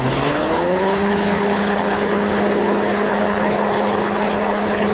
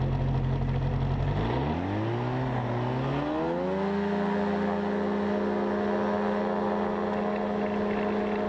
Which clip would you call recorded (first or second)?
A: second